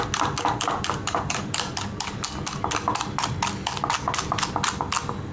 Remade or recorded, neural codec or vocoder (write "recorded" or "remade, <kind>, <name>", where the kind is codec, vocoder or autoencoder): recorded